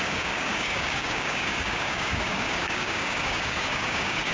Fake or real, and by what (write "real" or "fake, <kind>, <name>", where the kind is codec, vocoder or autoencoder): fake, codec, DAC